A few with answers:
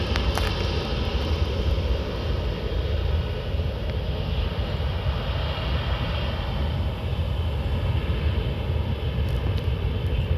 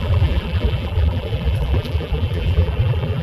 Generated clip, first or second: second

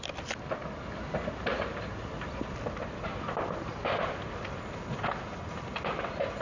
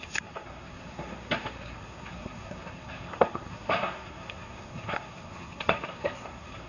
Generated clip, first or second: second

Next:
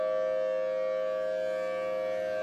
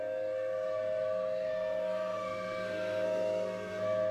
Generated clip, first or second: second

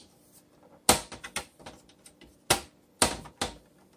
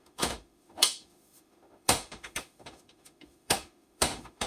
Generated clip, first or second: second